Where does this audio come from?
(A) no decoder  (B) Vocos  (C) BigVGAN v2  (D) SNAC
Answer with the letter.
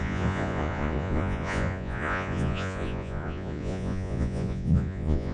B